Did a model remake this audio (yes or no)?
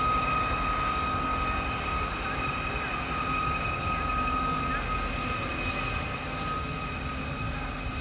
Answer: no